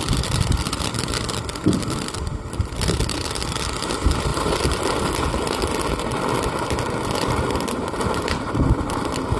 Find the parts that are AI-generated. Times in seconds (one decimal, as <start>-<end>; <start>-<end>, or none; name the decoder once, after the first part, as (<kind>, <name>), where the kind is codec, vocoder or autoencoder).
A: none